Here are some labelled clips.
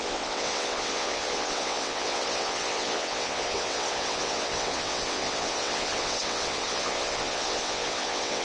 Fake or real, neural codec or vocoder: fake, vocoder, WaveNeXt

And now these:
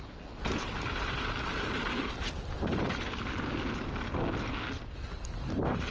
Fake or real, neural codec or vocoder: real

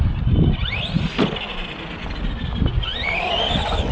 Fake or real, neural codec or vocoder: real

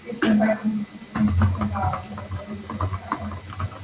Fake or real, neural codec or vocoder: real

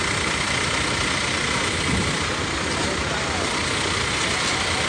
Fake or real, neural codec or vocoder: real